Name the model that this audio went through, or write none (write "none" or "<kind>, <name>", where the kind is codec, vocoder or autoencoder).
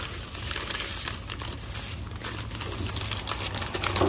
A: none